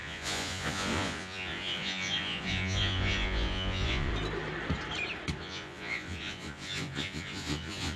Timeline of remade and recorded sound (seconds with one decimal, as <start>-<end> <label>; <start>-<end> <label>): 0.0-4.1 remade; 4.1-5.4 recorded; 5.4-8.0 remade